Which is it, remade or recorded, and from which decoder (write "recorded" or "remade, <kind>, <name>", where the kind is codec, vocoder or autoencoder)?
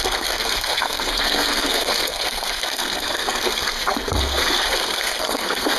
remade, codec, SNAC